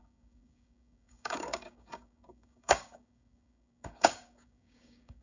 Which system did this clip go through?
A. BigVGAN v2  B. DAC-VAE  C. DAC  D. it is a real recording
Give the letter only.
C